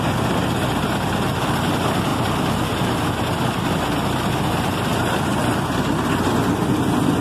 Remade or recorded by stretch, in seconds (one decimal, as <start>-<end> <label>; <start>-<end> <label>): 0.0-7.2 recorded